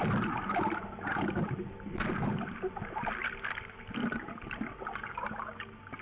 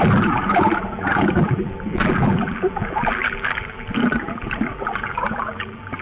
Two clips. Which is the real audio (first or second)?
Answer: first